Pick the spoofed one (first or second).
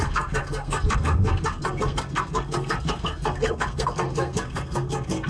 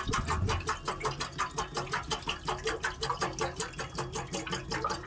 first